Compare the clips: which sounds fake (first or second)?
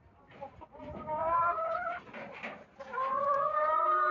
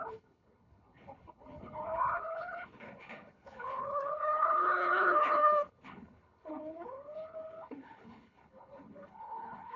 second